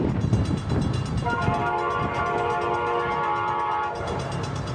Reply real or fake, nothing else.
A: fake